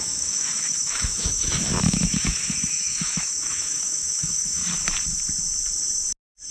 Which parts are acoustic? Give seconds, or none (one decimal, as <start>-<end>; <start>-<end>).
4.6-6.5